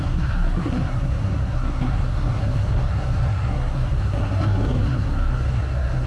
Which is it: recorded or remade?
remade